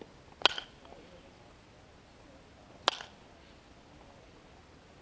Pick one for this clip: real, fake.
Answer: real